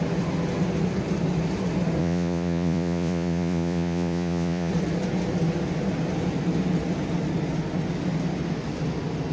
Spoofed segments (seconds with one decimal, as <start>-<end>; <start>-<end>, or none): 2.0-4.7